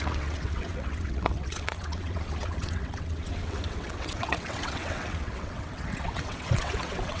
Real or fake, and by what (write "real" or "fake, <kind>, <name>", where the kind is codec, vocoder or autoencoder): fake, vocoder, WaveNeXt